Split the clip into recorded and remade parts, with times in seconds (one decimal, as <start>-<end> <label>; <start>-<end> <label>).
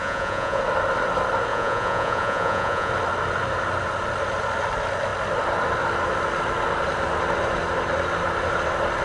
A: 0.0-0.6 remade; 0.6-1.5 recorded; 1.5-2.9 remade; 2.9-9.0 recorded